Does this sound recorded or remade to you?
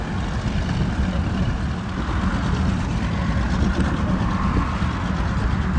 recorded